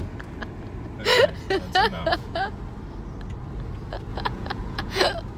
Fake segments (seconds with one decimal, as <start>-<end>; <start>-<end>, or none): 1.9-2.6; 4.1-5.0